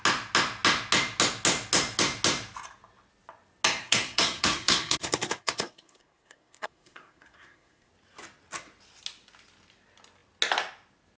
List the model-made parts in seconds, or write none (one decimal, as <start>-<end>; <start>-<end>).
3.8-7.9